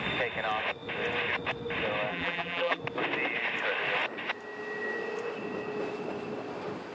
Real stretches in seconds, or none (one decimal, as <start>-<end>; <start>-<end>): 0.0-2.1; 2.8-6.9